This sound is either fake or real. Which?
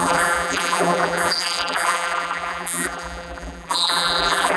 fake